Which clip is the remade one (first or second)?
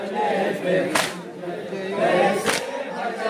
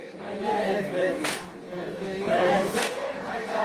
second